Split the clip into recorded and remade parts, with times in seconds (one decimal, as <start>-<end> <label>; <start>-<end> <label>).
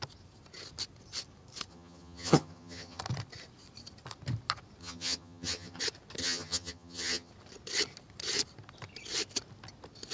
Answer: 0.0-1.7 recorded; 1.7-3.0 remade; 3.0-4.8 recorded; 4.8-5.8 remade; 5.8-6.2 recorded; 6.2-7.3 remade; 7.3-10.1 recorded